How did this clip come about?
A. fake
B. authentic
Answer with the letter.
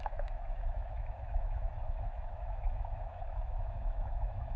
A